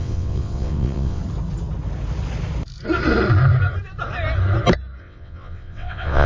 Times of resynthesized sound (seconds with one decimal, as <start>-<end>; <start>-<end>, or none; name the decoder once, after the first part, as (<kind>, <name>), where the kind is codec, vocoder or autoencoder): 0.0-1.2 (vocoder, WaveNeXt); 5.0-6.3